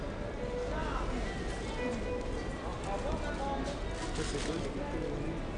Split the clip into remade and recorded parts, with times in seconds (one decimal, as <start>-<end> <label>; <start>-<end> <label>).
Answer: 0.0-5.6 recorded